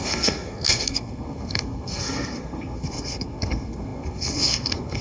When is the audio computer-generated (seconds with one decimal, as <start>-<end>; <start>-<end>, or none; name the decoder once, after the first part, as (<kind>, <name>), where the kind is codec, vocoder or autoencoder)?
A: 0.0-5.0 (codec, SNAC)